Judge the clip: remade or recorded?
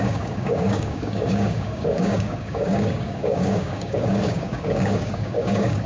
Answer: remade